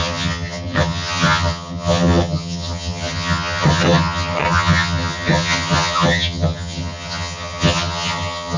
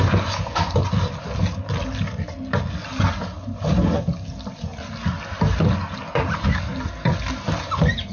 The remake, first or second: first